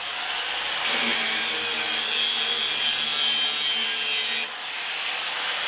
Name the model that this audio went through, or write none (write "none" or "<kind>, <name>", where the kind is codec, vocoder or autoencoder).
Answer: none